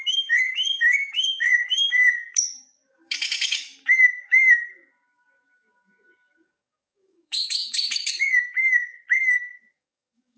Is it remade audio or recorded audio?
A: remade